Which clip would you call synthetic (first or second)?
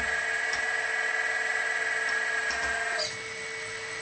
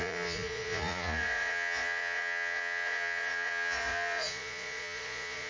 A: second